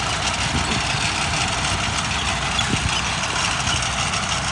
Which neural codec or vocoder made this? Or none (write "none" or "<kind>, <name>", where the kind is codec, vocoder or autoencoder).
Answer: none